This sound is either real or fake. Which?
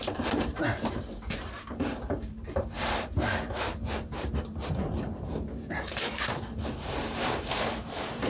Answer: fake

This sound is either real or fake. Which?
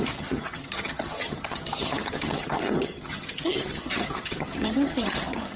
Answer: fake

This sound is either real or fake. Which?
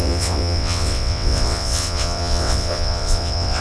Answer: fake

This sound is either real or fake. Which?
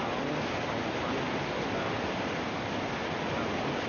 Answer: real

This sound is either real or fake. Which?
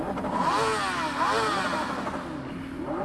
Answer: real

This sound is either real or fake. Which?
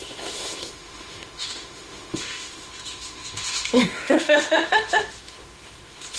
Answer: fake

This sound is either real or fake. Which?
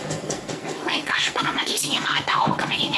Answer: fake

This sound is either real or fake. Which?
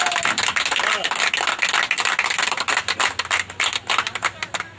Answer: real